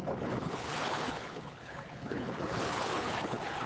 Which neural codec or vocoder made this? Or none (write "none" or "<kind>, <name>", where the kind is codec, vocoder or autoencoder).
codec, HILCodec